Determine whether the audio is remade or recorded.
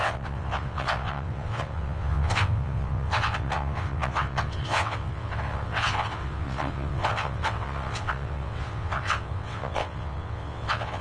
remade